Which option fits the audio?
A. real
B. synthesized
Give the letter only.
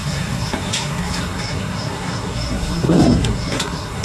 B